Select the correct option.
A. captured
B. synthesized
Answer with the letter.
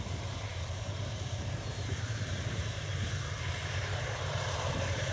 B